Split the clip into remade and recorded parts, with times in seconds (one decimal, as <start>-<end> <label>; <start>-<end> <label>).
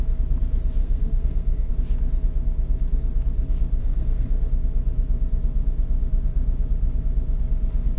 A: 0.0-0.8 recorded; 0.8-1.7 remade; 1.7-3.8 recorded; 3.8-4.5 remade; 4.5-8.0 recorded